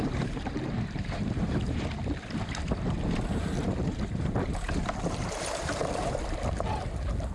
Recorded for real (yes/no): no